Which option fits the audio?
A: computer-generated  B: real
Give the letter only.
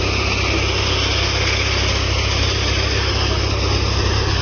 B